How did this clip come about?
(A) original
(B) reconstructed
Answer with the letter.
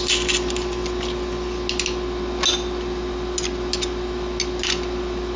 A